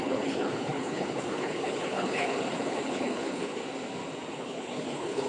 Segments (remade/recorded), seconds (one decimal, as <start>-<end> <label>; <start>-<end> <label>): 0.0-3.6 remade; 3.6-4.3 recorded; 4.3-5.3 remade